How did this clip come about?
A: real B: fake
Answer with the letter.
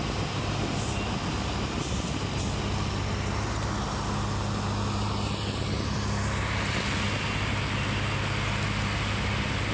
A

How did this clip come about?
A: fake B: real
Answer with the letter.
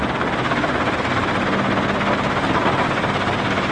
B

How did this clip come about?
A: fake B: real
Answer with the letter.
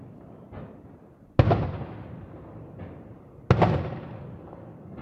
B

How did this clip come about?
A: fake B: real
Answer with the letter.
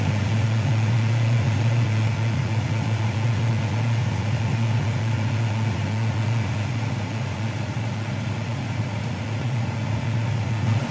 A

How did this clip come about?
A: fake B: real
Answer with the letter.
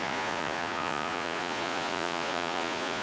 A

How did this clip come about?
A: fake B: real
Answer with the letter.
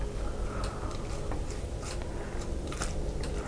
B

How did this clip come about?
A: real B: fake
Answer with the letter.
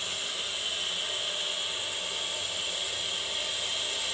A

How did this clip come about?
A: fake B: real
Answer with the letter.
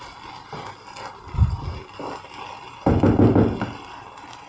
B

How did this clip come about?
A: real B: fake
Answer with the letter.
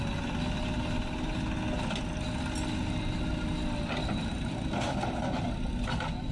A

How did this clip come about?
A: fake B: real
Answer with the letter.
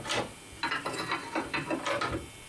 B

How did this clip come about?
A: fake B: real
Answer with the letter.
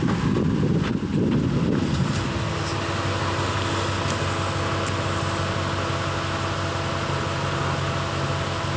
B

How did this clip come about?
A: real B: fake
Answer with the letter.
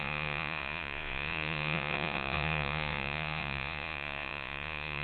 B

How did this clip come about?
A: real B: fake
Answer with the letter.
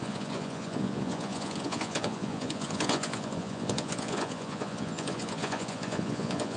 B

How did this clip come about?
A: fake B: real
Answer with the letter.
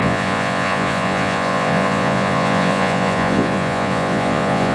A